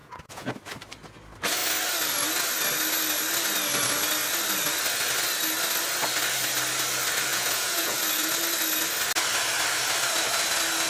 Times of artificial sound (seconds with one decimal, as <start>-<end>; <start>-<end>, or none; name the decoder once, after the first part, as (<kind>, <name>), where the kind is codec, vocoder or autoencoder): 0.0-0.5 (vocoder, Vocos); 7.3-8.0